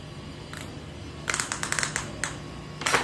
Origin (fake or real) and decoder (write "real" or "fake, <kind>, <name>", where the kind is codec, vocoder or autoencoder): real